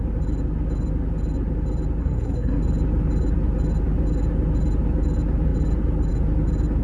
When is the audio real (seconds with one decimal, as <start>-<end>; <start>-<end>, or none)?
0.0-2.0; 2.6-6.8